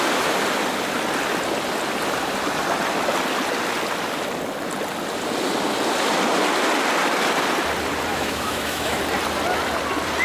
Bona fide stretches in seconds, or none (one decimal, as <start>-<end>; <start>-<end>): 0.0-8.1; 9.0-10.2